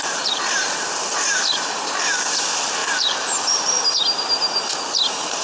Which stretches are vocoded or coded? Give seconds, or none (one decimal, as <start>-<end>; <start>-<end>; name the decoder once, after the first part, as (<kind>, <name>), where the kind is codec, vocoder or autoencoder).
0.0-2.4 (vocoder, BigVGAN v2); 2.8-3.9